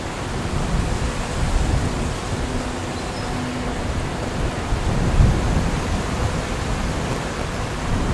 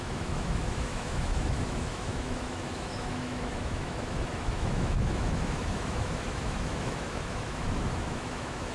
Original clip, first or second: first